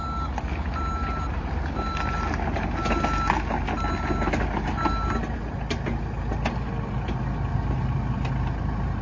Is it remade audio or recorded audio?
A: recorded